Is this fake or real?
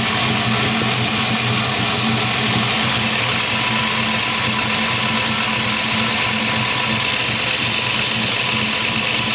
real